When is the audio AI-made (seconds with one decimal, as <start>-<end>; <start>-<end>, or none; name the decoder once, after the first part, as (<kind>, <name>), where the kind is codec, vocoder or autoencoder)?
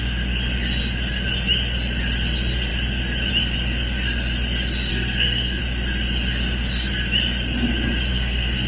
4.9-5.6 (codec, SNAC); 8.1-8.7